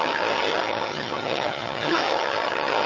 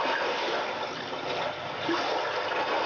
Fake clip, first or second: first